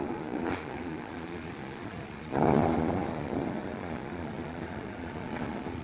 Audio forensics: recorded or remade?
remade